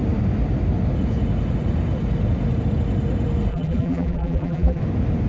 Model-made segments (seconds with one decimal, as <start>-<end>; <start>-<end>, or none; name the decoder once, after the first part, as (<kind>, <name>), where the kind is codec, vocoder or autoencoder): 3.5-4.8 (vocoder, BigVGAN v2)